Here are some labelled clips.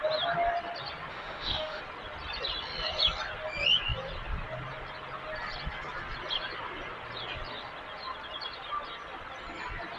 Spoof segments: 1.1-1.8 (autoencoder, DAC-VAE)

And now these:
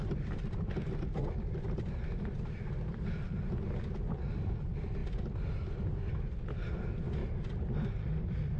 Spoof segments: none

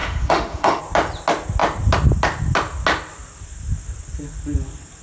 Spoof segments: 0.0-0.8 (autoencoder, DAC-VAE)

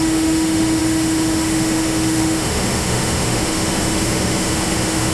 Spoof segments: 0.0-5.1 (autoencoder, DAC-VAE)

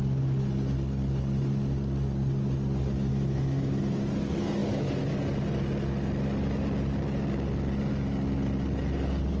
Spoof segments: 3.1-3.8 (autoencoder, DAC-VAE)

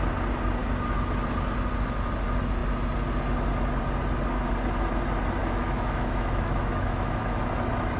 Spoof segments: 5.4-7.2 (autoencoder, DAC-VAE)

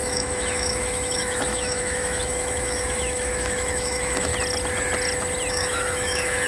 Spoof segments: 0.0-4.3 (autoencoder, DAC-VAE); 5.5-6.5